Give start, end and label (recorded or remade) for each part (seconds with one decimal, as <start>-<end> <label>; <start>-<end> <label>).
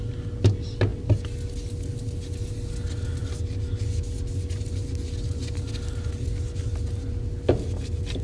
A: 0.0-8.2 recorded